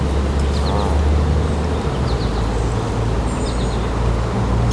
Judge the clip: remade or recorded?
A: recorded